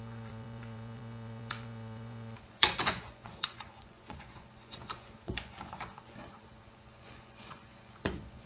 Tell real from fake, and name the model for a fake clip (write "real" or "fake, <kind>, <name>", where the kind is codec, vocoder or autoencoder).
fake, vocoder, Vocos